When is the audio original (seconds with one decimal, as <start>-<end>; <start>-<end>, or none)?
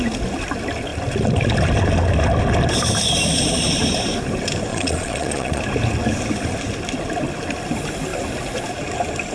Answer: 0.0-4.7; 5.6-9.3